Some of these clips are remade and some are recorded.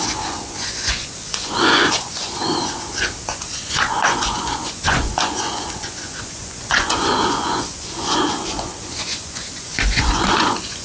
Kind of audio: remade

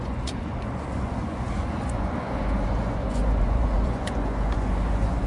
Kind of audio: remade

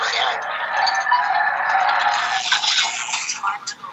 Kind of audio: recorded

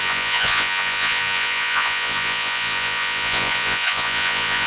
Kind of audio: remade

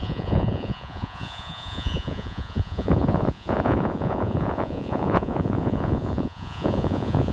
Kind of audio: remade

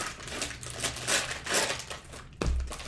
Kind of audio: recorded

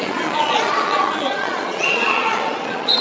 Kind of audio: remade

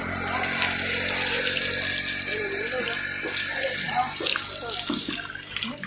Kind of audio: recorded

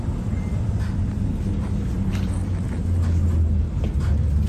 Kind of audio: recorded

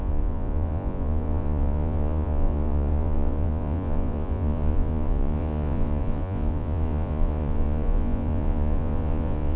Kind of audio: remade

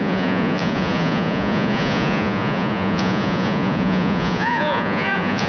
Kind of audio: remade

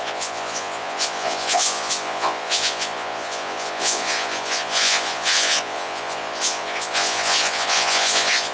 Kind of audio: remade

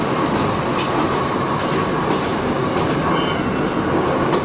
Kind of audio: recorded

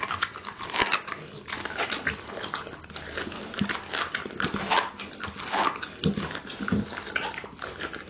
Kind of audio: recorded